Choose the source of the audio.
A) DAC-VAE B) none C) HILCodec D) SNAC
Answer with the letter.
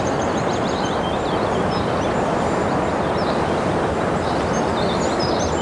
B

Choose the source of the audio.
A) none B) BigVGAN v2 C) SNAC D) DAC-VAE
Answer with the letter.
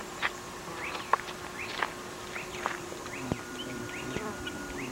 A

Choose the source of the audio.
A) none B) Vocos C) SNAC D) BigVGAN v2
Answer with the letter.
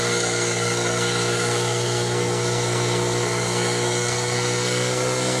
C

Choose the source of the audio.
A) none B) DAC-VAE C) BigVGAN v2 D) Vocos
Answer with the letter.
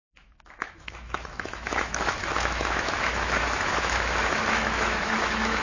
B